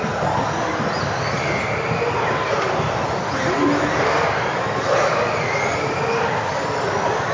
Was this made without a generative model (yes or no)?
yes